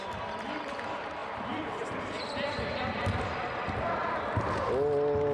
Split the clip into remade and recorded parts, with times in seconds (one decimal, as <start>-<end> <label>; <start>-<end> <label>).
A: 0.0-5.3 recorded